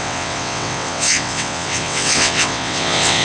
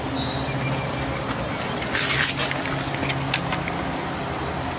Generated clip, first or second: first